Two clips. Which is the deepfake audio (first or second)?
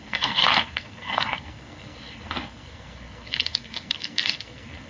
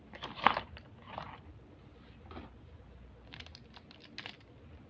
first